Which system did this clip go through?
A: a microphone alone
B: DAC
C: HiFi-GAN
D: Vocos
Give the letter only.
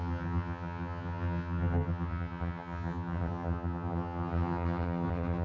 C